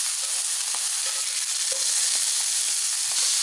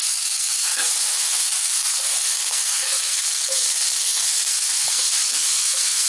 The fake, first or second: second